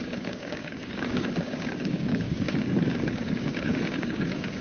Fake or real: fake